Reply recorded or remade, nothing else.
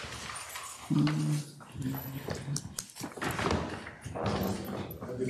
recorded